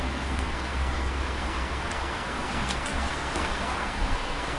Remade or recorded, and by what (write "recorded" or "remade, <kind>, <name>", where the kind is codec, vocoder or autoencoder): remade, codec, SNAC